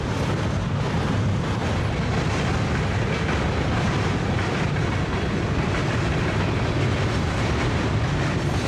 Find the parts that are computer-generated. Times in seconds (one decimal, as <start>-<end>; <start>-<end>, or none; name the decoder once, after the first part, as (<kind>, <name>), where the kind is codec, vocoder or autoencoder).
0.0-1.6 (vocoder, BigVGAN v2); 3.7-8.7